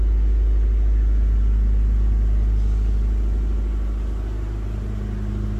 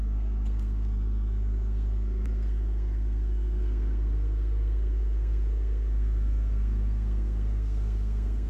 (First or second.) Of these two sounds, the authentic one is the first